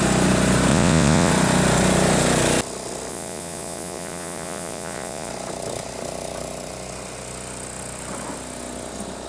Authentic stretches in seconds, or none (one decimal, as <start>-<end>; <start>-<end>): 0.0-0.7; 1.3-3.1; 5.3-9.3